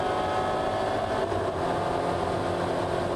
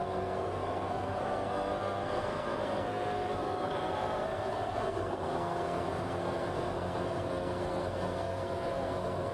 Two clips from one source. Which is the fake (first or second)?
second